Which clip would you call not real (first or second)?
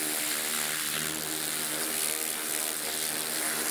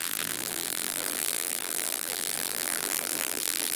second